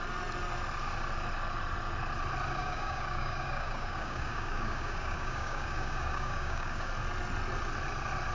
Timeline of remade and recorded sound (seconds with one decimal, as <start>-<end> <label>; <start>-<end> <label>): 0.0-2.6 recorded; 2.6-6.9 remade; 6.9-8.3 recorded